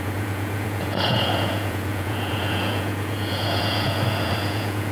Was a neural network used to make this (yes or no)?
yes